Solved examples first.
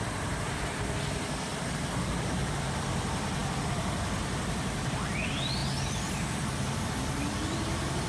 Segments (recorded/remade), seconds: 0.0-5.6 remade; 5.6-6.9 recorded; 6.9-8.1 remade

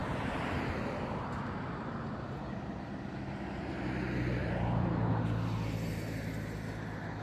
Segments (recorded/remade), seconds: 0.0-2.4 remade; 2.4-4.4 recorded; 4.4-5.2 remade; 5.2-7.2 recorded